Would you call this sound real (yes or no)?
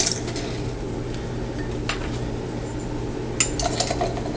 yes